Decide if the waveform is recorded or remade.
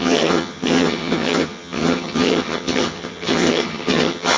remade